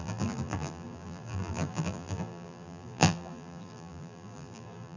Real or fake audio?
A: fake